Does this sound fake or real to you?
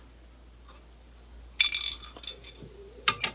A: real